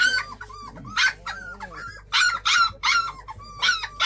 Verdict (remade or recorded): recorded